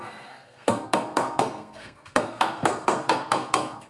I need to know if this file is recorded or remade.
remade